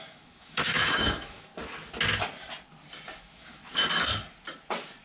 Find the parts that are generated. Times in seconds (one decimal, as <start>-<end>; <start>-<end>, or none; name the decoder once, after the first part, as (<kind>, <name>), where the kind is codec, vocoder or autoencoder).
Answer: 0.0-1.5 (autoencoder, DAC-VAE); 3.2-3.6